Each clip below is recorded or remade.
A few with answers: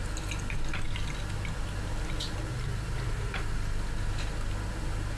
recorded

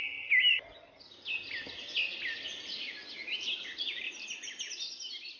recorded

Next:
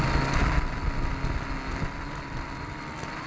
recorded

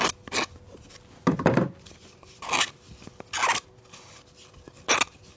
recorded